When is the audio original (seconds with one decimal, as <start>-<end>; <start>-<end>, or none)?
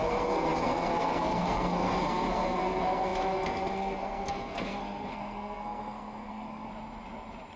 6.7-7.6